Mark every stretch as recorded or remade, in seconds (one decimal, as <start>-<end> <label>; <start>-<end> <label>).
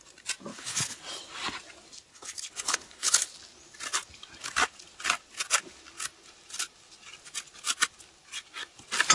0.0-0.5 recorded; 0.5-1.0 remade; 1.0-2.1 recorded; 2.1-3.3 remade; 3.3-9.1 recorded